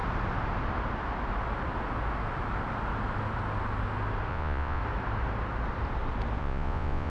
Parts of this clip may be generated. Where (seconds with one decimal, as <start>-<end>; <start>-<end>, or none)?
4.3-4.8; 6.4-7.1